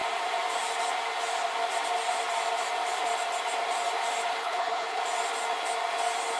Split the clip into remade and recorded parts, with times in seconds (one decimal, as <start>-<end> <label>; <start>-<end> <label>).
0.0-4.4 recorded; 4.4-5.0 remade; 5.0-6.4 recorded